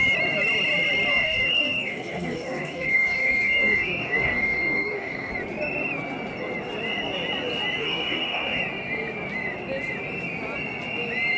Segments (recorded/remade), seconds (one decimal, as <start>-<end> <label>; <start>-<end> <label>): 0.0-1.1 recorded; 1.1-5.3 remade; 5.3-7.8 recorded; 7.8-8.6 remade; 8.6-11.4 recorded